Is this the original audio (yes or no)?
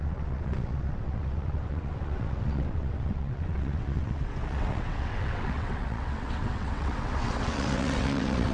no